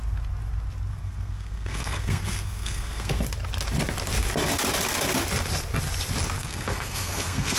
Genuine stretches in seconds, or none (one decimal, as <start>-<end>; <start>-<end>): 0.0-0.9; 3.2-6.4